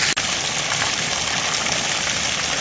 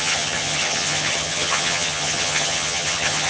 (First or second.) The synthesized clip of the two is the second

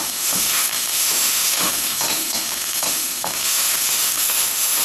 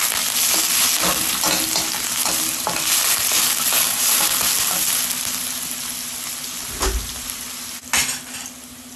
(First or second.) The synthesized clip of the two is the first